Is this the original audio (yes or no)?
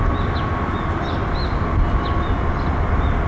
yes